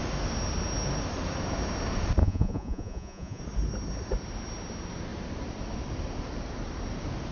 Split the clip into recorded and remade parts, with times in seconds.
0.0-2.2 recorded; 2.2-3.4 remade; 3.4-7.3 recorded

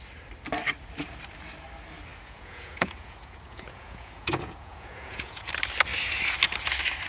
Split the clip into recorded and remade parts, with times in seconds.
0.0-2.1 recorded; 2.1-5.5 remade; 5.5-7.1 recorded